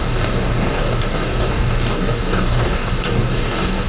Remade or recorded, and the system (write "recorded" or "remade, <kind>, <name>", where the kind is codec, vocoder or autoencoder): remade, codec, DAC